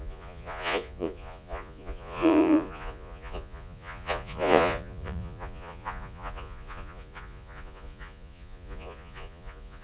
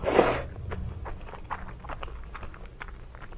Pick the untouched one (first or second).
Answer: second